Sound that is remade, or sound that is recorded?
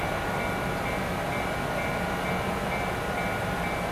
recorded